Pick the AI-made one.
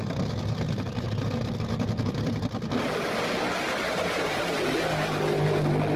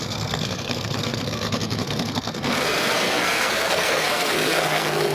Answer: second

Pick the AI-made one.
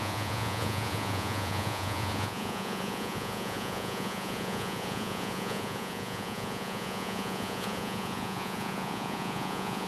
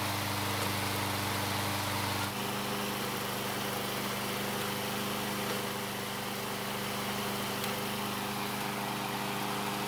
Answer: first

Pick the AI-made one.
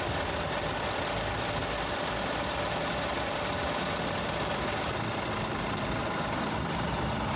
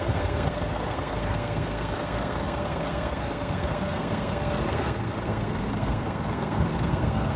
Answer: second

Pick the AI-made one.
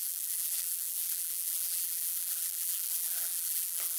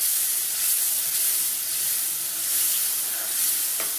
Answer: first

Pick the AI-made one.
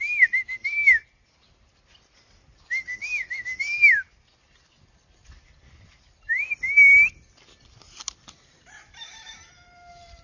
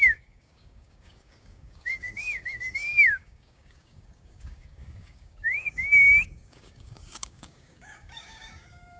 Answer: second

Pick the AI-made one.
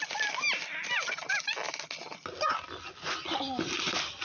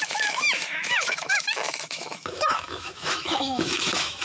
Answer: second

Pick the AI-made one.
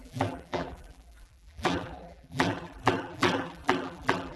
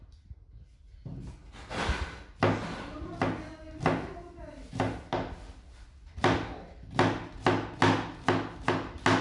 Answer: first